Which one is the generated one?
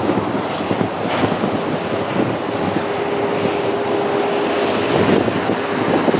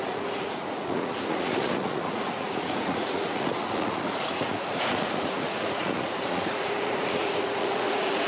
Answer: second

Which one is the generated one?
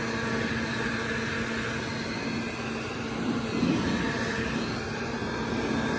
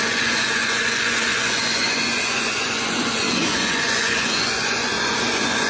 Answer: second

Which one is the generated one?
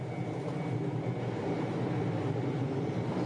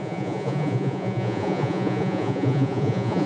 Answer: second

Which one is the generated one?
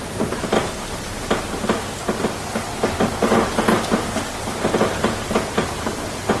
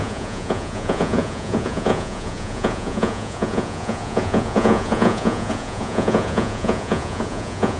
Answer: second